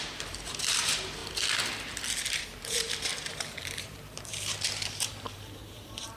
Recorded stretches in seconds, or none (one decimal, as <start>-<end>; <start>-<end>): 1.2-2.4